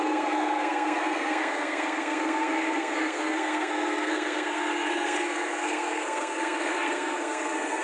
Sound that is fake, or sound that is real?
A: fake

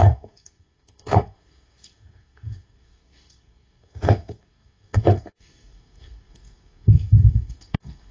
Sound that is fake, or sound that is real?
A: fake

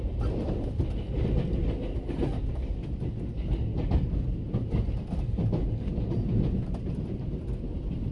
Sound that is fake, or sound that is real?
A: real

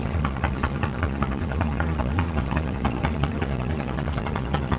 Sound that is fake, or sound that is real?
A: fake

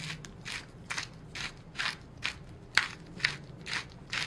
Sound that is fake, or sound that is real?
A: real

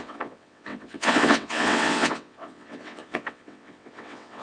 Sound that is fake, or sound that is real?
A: fake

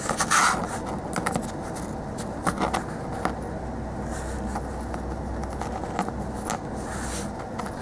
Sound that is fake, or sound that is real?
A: real